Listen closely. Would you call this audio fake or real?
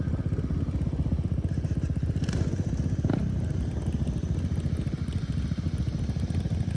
real